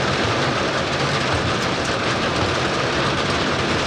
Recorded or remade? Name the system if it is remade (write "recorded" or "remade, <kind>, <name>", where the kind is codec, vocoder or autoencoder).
remade, vocoder, BigVGAN v2